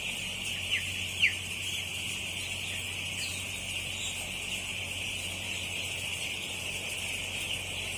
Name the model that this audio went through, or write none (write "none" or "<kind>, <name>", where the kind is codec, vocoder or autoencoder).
none